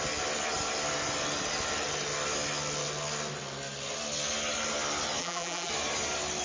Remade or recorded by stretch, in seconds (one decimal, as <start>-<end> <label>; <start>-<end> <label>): 0.0-5.2 recorded; 5.2-5.7 remade; 5.7-6.4 recorded